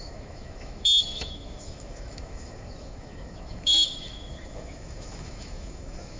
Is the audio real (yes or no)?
no